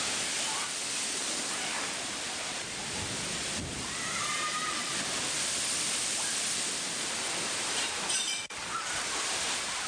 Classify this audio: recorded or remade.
remade